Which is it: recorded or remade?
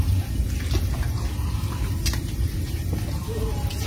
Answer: remade